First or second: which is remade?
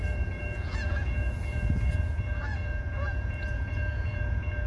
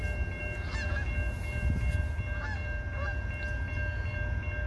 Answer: first